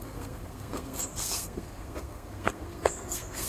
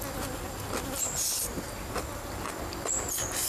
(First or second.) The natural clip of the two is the second